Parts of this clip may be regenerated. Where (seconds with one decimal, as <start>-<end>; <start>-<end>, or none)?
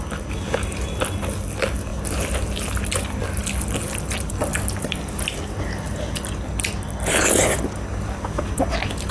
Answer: none